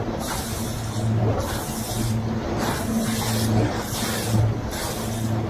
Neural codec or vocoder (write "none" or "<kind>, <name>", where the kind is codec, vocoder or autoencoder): none